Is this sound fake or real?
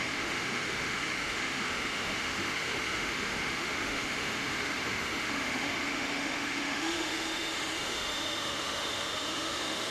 fake